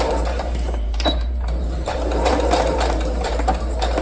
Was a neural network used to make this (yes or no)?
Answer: yes